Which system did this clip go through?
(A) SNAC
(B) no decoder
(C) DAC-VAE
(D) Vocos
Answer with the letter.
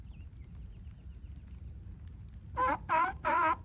B